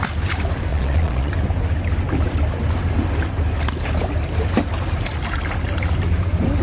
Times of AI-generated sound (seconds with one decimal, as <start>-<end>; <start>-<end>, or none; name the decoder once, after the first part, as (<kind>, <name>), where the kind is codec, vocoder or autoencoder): 0.7-1.3 (vocoder, Vocos)

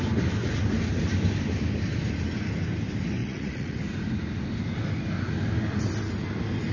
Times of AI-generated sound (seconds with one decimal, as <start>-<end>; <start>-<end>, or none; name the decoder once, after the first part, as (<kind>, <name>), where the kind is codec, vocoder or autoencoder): 3.2-3.8 (vocoder, Vocos)

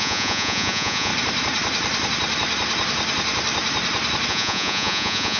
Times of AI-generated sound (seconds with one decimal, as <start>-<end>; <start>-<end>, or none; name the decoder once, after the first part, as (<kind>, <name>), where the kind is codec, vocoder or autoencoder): 0.0-1.1 (vocoder, Vocos); 4.3-5.4

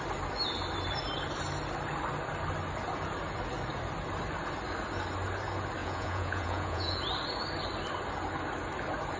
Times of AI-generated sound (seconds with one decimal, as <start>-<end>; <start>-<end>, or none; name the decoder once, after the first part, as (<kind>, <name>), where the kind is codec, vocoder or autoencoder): 5.8-7.0 (vocoder, Vocos)

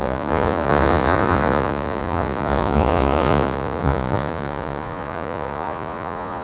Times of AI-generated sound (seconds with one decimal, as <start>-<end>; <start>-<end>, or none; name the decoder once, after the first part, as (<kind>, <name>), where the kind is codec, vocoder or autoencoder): 0.0-6.4 (vocoder, Vocos)